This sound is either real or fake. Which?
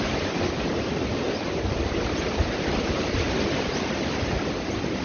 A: real